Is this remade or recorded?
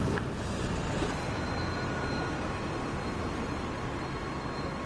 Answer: recorded